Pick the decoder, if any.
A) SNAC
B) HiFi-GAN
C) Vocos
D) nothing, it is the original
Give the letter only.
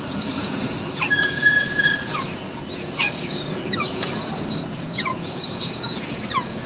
C